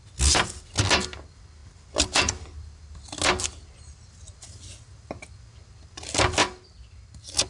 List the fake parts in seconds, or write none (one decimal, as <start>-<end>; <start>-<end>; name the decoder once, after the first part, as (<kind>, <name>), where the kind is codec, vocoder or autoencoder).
none